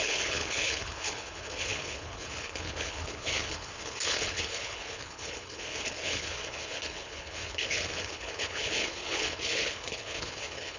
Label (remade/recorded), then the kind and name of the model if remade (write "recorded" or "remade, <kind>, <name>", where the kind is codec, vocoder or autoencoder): remade, codec, HILCodec